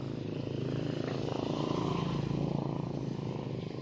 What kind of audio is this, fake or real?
real